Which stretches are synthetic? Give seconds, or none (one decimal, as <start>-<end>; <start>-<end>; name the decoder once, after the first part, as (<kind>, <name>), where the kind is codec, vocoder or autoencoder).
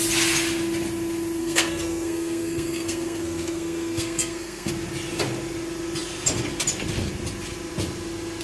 1.4-4.7 (codec, SNAC)